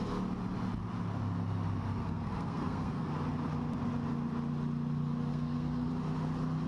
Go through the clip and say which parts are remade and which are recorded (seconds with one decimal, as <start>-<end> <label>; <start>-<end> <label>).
0.0-2.0 recorded; 2.0-3.1 remade; 3.1-5.3 recorded; 5.3-5.9 remade; 5.9-6.7 recorded

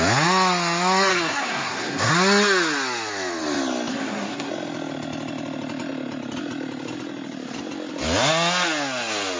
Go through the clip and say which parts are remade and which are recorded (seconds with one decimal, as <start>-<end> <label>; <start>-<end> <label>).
0.0-1.1 recorded; 1.1-2.1 remade; 2.1-3.9 recorded; 3.9-4.5 remade; 4.5-9.4 recorded

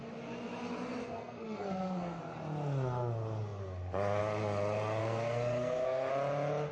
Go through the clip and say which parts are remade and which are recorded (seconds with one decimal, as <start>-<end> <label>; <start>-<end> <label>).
0.0-1.0 recorded; 1.0-2.2 remade; 2.2-5.0 recorded; 5.0-6.1 remade; 6.1-6.7 recorded